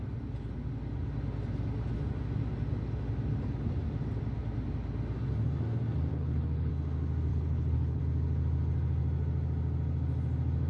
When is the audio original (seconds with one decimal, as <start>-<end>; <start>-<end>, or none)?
0.0-6.1; 6.7-7.3; 8.0-10.7